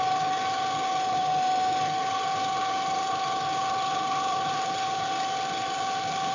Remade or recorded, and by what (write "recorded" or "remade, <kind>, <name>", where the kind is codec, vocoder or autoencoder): remade, codec, HILCodec